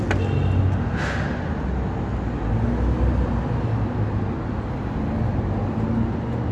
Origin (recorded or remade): recorded